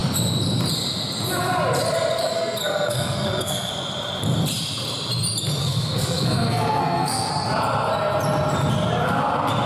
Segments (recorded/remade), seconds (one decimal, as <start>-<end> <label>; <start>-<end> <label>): 0.0-2.2 recorded; 2.2-3.7 remade; 3.7-5.6 recorded; 5.6-7.3 remade; 7.3-9.7 recorded